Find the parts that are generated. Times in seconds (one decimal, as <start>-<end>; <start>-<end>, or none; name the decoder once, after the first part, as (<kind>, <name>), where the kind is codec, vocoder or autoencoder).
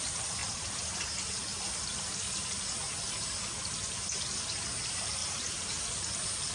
0.4-1.5 (vocoder, BigVGAN v2); 5.2-5.8